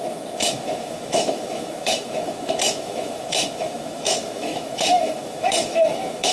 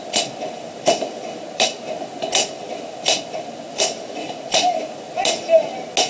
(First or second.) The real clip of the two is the second